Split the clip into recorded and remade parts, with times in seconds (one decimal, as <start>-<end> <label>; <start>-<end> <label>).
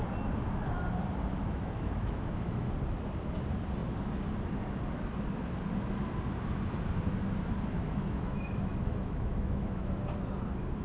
0.0-1.4 recorded; 1.4-2.7 remade; 2.7-7.8 recorded; 7.8-10.0 remade; 10.0-10.8 recorded